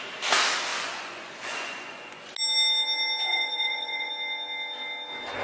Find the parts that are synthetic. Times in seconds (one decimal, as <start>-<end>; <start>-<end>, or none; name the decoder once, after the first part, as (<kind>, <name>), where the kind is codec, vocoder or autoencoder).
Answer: 0.7-2.3 (vocoder, Vocos); 3.3-4.1